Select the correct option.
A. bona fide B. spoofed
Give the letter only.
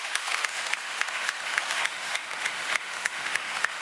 B